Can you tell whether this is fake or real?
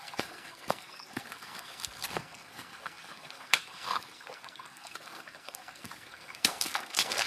fake